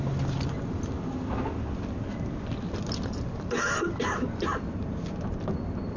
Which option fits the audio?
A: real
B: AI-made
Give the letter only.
A